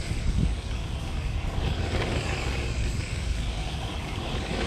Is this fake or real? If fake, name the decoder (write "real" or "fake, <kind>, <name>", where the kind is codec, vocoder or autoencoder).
fake, codec, DAC